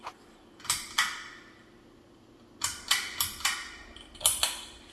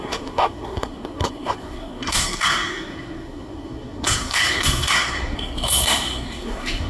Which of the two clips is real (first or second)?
first